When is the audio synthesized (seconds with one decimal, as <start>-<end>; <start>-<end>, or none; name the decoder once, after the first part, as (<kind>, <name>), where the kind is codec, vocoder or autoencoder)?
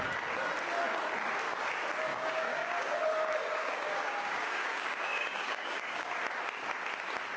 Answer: 2.1-3.0 (codec, DAC); 3.4-6.1